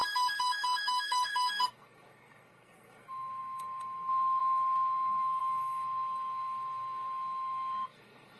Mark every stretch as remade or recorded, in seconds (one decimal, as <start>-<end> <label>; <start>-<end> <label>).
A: 0.0-8.4 remade